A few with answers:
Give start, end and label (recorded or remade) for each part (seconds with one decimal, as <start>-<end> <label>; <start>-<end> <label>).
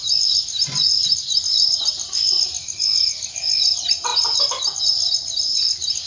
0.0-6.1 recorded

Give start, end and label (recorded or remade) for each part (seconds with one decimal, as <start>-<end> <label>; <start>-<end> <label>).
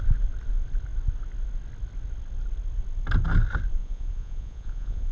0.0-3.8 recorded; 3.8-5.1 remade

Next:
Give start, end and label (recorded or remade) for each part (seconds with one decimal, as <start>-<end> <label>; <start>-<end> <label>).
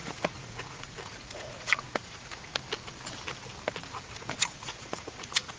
0.0-2.5 remade; 2.5-4.0 recorded; 4.0-5.6 remade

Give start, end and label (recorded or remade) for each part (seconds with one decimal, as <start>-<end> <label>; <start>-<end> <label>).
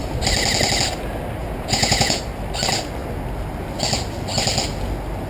0.0-1.4 recorded; 1.4-2.2 remade; 2.2-5.3 recorded